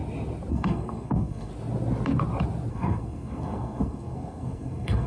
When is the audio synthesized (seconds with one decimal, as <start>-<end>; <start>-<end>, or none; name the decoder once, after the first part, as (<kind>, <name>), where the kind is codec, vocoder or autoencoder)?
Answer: 0.5-1.5 (codec, SNAC); 2.7-5.1